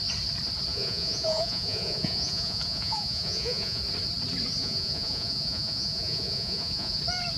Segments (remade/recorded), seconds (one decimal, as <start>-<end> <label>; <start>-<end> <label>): 0.0-0.7 recorded; 0.7-3.8 remade; 3.8-4.6 recorded; 4.6-7.0 remade; 7.0-7.4 recorded